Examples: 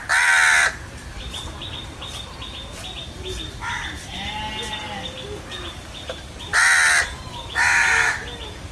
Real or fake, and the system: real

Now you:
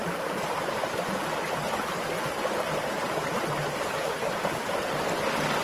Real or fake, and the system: real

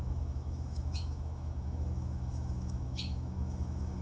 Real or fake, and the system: fake, autoencoder, DAC-VAE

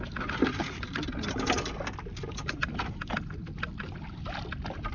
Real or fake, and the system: real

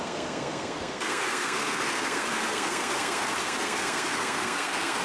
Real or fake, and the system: fake, codec, SNAC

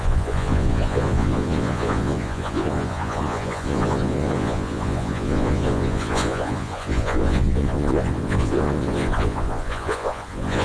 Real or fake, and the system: fake, vocoder, Vocos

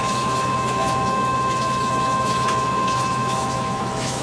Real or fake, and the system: fake, autoencoder, DAC-VAE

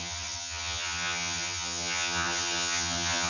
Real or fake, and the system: fake, vocoder, HiFi-GAN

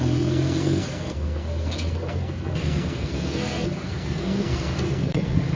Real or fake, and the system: fake, codec, SNAC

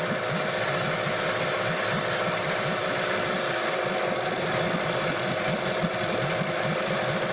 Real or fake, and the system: fake, vocoder, BigVGAN v2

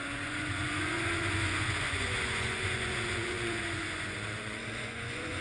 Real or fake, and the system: fake, vocoder, Vocos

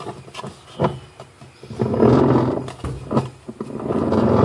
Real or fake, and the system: real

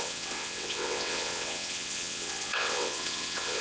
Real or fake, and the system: fake, vocoder, WaveNeXt